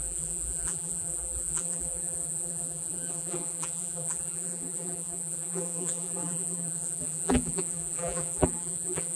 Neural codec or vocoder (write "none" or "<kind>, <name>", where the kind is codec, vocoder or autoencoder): vocoder, BigVGAN v2